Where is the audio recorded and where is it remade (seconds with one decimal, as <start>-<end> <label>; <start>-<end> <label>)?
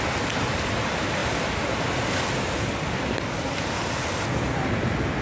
0.0-5.2 recorded